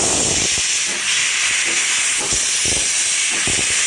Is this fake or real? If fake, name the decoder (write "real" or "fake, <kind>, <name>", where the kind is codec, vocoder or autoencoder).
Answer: real